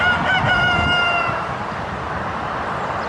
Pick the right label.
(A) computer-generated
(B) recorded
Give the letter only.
B